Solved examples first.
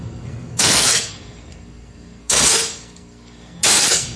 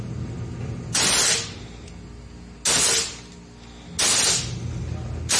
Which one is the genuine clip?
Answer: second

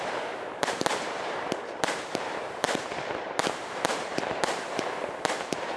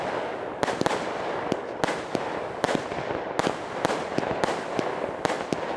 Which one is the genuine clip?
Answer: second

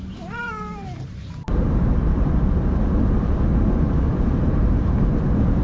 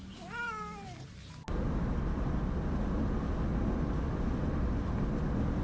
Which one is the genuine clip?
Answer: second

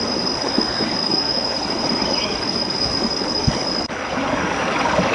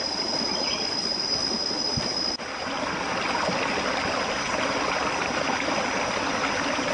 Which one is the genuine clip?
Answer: second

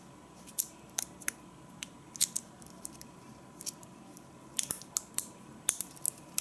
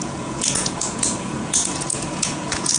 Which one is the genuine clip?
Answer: first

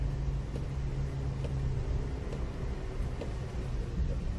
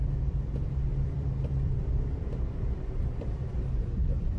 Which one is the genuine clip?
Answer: first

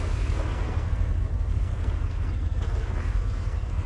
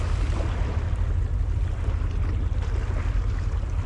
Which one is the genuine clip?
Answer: second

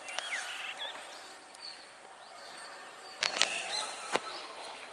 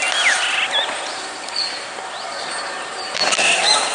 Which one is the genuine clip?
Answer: second